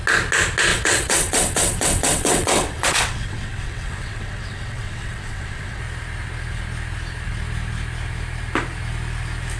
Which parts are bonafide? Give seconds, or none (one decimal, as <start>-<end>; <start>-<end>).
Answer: 0.0-0.7; 5.8-9.6